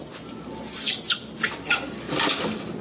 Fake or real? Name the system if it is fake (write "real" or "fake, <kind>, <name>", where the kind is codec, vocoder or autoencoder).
real